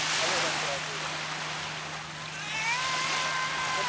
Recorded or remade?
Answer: recorded